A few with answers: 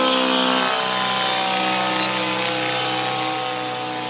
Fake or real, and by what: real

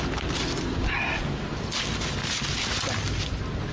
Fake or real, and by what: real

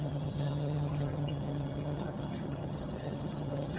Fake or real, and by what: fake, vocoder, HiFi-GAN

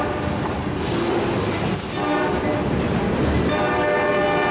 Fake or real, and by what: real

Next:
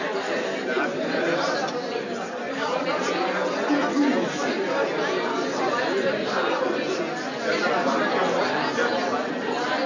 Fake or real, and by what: real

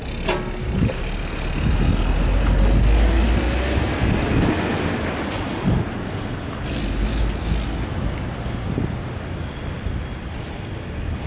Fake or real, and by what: real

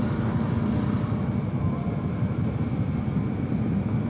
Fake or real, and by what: real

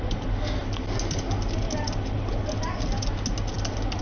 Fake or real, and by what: real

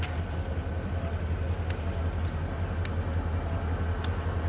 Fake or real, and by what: real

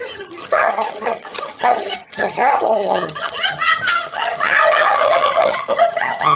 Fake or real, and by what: fake, vocoder, HiFi-GAN